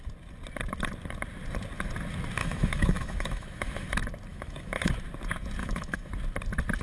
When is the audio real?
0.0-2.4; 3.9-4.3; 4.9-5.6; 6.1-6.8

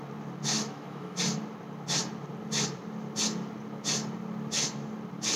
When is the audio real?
0.0-0.5; 1.2-5.4

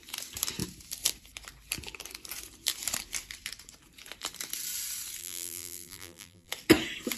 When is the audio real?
0.0-5.2; 6.5-7.2

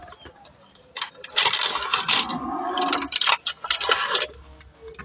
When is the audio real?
0.0-5.0